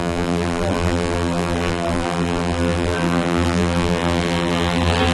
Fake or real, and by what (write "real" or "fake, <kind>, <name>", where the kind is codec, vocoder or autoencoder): fake, vocoder, BigVGAN v2